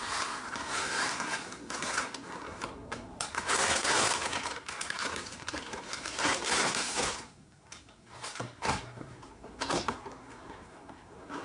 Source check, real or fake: fake